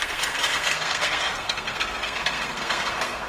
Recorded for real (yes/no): no